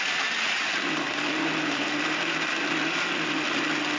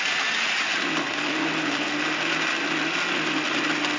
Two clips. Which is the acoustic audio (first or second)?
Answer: second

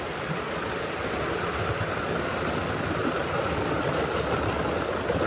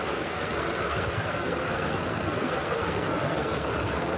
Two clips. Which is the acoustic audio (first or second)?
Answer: first